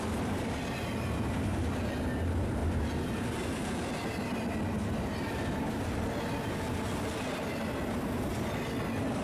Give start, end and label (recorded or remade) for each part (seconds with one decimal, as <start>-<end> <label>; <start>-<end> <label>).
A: 0.0-9.2 recorded